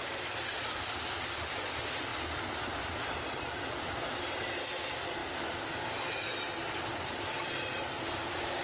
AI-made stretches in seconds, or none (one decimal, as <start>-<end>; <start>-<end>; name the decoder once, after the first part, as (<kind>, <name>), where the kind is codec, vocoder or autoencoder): none